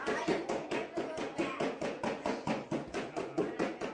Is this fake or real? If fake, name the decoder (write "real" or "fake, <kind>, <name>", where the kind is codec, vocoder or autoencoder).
fake, vocoder, Vocos